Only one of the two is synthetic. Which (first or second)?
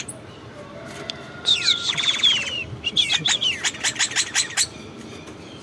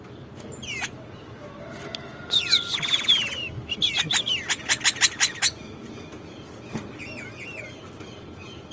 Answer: first